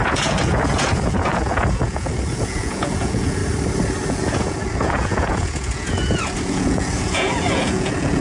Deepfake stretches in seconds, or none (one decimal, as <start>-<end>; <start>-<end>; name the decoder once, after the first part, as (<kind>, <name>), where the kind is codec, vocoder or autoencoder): 0.0-3.4 (vocoder, Vocos); 4.1-8.2